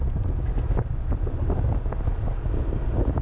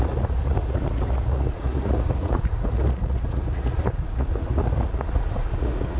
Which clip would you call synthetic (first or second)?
second